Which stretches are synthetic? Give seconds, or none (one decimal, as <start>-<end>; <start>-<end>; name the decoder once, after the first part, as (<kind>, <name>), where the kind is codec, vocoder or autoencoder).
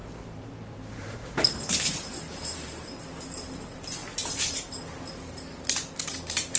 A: 0.0-1.2 (vocoder, BigVGAN v2); 2.3-3.0; 4.0-4.9